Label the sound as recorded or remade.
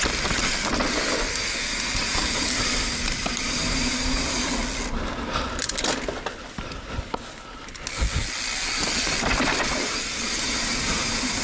recorded